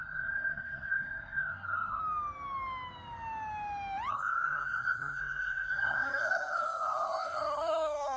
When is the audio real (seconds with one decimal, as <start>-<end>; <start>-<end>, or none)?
2.0-4.1